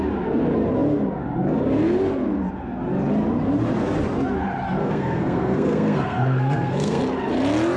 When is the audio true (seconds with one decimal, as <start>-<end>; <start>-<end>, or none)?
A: 0.0-4.8; 7.0-7.8